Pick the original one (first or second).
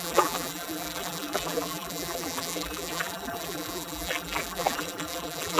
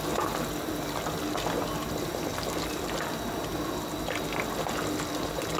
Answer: second